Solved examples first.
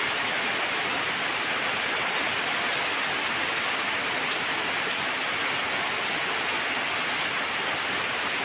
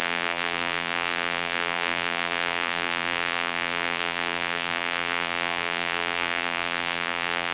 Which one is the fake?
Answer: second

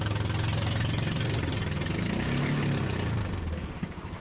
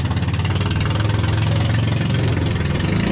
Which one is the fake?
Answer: first